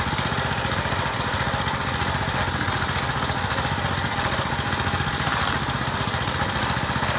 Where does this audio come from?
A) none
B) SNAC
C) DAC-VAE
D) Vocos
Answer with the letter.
A